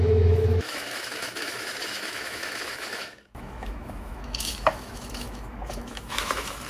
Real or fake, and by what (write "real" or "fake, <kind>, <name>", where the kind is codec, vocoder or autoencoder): fake, autoencoder, DAC-VAE